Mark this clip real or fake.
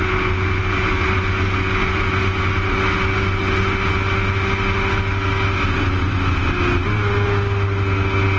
real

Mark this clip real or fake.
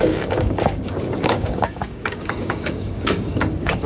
fake